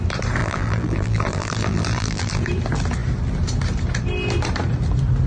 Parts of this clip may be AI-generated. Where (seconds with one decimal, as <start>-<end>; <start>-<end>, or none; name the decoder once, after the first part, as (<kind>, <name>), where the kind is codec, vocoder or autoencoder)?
0.4-2.4 (vocoder, BigVGAN v2)